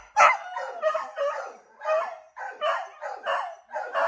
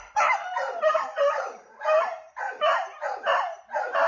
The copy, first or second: second